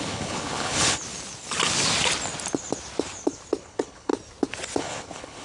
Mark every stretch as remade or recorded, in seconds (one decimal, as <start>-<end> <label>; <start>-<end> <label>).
0.0-1.0 remade; 1.0-3.6 recorded; 3.6-4.1 remade; 4.1-4.8 recorded; 4.8-5.4 remade